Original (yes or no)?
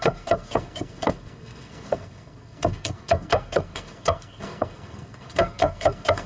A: no